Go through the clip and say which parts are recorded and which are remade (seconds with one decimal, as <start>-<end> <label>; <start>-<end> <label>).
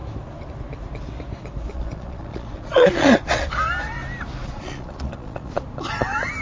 0.0-1.7 recorded; 1.7-3.5 remade; 3.5-4.4 recorded; 4.4-5.6 remade; 5.6-6.4 recorded